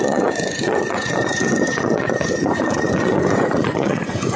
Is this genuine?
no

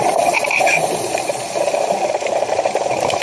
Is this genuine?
no